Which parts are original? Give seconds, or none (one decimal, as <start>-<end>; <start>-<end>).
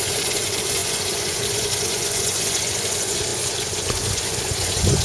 none